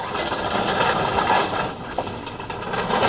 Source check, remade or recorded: recorded